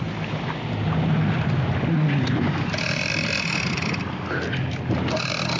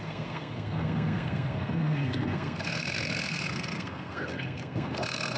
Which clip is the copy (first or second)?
second